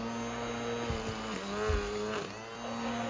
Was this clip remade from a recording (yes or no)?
no